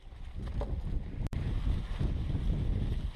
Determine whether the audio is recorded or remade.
recorded